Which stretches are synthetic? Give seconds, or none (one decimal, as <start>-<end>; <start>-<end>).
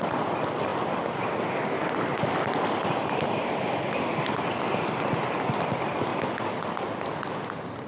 none